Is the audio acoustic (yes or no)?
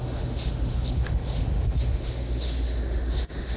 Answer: no